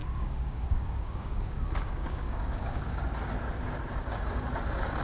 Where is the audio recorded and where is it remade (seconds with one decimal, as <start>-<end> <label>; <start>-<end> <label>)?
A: 0.0-3.0 remade; 3.0-4.0 recorded; 4.0-4.5 remade; 4.5-5.0 recorded